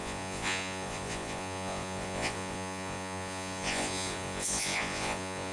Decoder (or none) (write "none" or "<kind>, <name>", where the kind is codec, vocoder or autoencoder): vocoder, Vocos